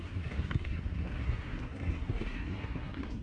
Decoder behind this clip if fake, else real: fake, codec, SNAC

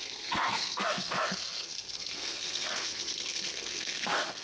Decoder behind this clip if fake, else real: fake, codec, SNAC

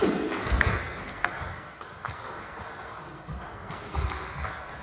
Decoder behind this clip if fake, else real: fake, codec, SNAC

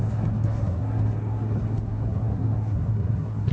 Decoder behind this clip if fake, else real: fake, codec, SNAC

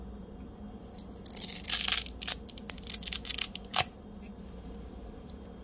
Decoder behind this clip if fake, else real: real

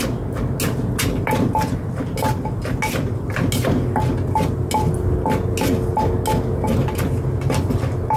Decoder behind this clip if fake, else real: real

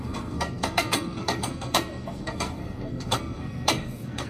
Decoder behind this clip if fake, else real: fake, codec, SNAC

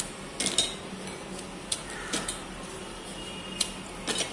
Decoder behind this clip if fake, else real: real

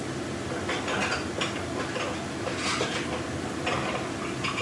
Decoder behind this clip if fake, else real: real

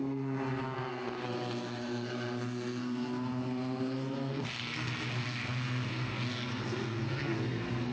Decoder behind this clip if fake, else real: fake, codec, SNAC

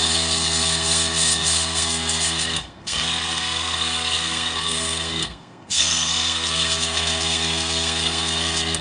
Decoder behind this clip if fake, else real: fake, codec, SNAC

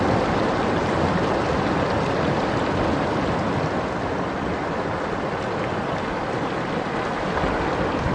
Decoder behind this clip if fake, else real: real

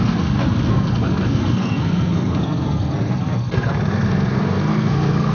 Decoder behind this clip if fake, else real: fake, codec, SNAC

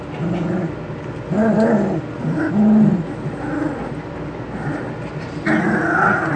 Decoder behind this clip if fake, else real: real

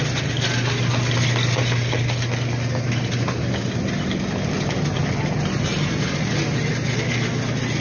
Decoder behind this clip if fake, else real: real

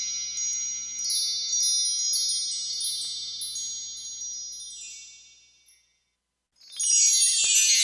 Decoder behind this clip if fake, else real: real